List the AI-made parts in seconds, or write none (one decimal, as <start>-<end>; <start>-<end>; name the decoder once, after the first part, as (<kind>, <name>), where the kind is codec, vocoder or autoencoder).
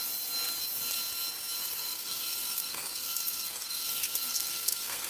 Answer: 1.6-5.1 (codec, SNAC)